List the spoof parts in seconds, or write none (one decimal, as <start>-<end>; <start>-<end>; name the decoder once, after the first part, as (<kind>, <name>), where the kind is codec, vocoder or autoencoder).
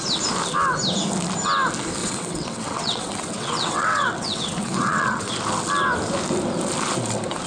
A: 2.0-5.3 (vocoder, WaveNeXt)